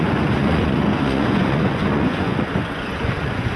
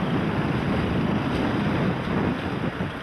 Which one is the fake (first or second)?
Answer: first